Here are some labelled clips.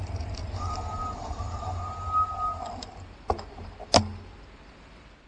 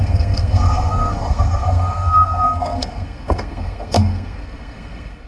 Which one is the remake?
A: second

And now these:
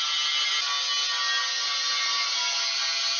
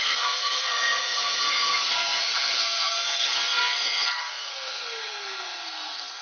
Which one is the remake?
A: second